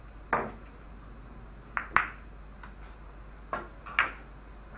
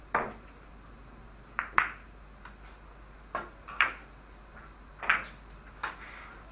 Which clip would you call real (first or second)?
first